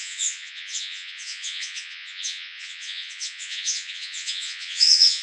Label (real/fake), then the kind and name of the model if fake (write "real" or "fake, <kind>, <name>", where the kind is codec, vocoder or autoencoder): fake, vocoder, Vocos